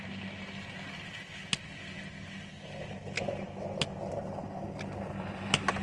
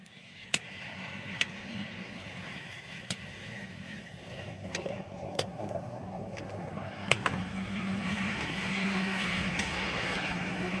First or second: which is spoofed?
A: second